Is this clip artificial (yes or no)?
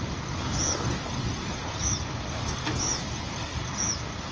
no